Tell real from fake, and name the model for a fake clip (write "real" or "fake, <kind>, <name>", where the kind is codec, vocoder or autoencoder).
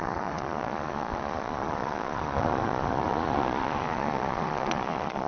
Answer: fake, vocoder, Vocos